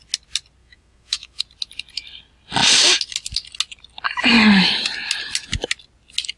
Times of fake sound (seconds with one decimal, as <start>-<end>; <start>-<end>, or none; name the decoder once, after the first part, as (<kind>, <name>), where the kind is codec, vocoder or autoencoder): 0.6-1.4 (autoencoder, DAC-VAE)